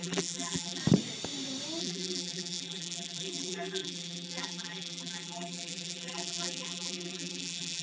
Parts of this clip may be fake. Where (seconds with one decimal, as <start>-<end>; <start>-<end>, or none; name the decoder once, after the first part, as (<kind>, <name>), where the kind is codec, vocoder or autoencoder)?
0.0-0.8 (vocoder, BigVGAN v2); 1.8-7.8